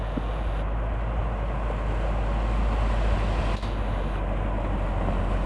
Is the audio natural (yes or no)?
yes